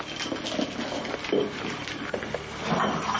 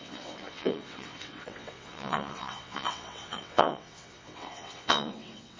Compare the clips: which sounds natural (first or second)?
first